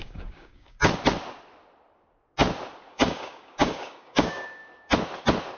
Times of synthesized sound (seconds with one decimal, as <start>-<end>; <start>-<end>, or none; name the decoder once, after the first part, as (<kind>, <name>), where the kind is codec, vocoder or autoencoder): 0.0-0.8 (codec, DAC); 2.9-4.6